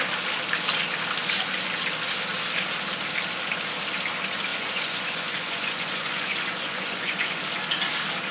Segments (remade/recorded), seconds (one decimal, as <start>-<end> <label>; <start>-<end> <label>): 0.0-4.5 recorded; 4.5-7.4 remade; 7.4-8.3 recorded